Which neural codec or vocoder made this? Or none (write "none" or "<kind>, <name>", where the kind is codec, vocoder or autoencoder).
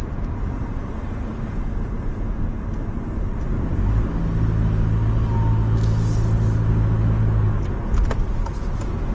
none